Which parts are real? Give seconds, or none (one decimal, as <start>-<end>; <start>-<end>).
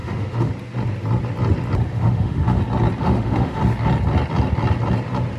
0.5-1.9; 2.6-3.0; 3.6-5.4